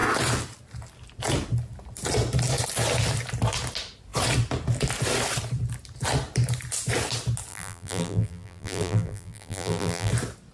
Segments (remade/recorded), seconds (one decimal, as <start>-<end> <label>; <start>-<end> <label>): 0.0-7.5 recorded; 7.5-10.1 remade; 10.1-10.5 recorded